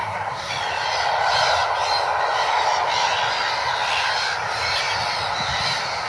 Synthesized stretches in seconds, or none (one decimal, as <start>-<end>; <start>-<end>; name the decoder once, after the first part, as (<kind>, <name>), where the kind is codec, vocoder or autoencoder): 0.0-0.5 (codec, SNAC)

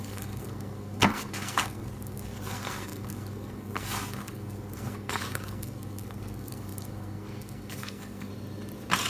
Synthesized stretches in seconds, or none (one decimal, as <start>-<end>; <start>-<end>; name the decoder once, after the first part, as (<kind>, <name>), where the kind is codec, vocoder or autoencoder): 0.0-8.3 (codec, SNAC)

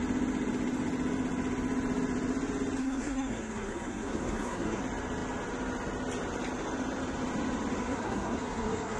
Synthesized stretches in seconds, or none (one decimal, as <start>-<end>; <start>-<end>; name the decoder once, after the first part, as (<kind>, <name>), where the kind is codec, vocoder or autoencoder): 2.8-4.8 (codec, SNAC); 7.8-9.0

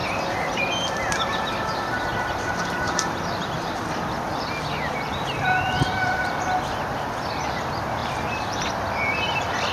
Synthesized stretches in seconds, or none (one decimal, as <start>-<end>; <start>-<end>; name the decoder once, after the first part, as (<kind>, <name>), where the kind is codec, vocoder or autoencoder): 0.0-0.6 (vocoder, BigVGAN v2); 2.1-4.0; 8.0-8.7

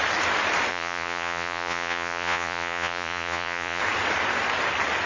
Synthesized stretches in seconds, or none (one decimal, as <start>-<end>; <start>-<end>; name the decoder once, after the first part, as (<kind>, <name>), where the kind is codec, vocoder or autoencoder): 0.7-3.8 (vocoder, Vocos)

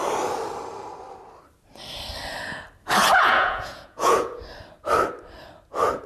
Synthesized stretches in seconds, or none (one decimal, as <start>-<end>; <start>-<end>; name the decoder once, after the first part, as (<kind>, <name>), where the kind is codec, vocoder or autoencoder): 3.1-4.4 (vocoder, Vocos)

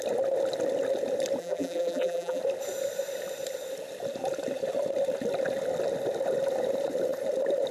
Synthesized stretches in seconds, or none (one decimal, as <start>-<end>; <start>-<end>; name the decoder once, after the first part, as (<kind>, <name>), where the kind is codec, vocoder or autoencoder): 1.4-2.4 (vocoder, BigVGAN v2)

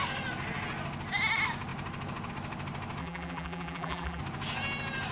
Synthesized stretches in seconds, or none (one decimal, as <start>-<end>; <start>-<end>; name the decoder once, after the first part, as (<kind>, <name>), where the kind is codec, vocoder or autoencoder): 3.0-4.2 (vocoder, BigVGAN v2)